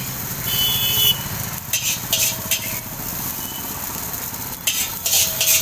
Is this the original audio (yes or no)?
yes